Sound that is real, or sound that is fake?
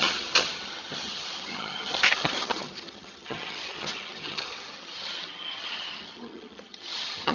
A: fake